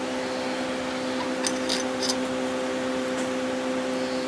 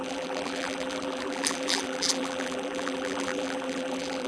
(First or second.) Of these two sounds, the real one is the first